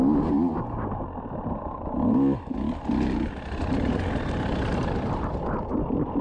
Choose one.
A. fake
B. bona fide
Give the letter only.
B